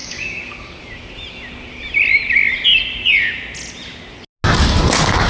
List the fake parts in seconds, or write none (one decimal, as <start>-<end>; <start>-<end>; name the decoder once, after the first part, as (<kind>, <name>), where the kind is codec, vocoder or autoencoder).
0.0-0.8 (codec, DAC)